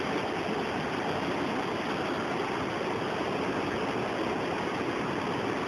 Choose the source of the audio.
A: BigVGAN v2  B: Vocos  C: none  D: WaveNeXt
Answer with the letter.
C